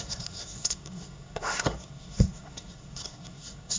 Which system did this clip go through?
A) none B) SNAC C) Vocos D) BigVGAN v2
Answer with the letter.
B